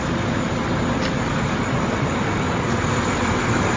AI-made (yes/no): no